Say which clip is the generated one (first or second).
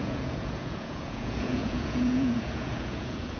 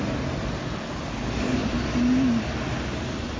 first